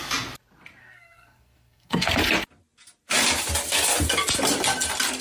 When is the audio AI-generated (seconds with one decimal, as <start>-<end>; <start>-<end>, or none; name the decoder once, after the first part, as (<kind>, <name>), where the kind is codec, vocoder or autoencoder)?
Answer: 0.8-2.2 (codec, SNAC)